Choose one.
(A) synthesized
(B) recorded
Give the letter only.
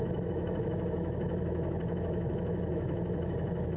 A